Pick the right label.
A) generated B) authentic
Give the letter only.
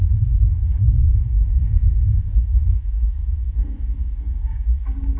A